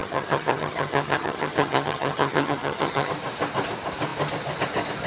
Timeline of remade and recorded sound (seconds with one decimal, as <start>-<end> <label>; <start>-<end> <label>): 0.0-3.1 remade; 3.1-5.1 recorded